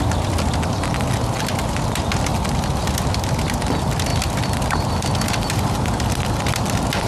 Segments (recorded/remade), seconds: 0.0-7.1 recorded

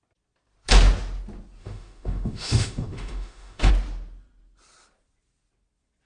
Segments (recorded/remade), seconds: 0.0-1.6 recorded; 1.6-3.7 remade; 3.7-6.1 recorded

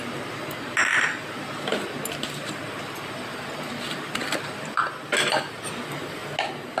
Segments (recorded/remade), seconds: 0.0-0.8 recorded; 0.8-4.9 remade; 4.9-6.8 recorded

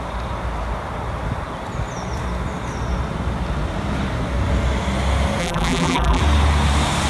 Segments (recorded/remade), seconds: 0.0-5.4 recorded; 5.4-6.2 remade; 6.2-7.1 recorded

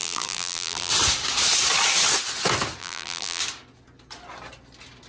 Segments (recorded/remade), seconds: 0.0-0.9 remade; 0.9-2.8 recorded; 2.8-3.4 remade; 3.4-5.1 recorded

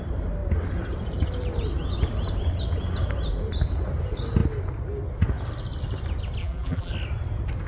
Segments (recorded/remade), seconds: 0.0-6.4 recorded; 6.4-6.9 remade; 6.9-7.7 recorded